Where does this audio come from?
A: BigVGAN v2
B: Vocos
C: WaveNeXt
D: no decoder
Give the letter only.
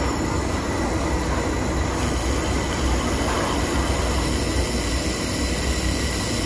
D